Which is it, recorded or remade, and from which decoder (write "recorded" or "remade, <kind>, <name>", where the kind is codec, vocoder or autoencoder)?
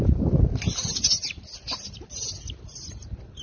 recorded